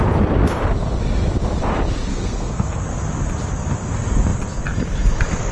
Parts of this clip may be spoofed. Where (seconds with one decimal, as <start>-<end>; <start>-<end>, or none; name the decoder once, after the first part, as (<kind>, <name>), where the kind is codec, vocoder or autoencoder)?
2.1-2.8 (codec, SNAC)